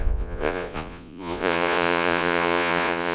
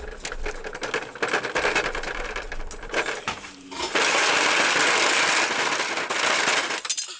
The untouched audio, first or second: second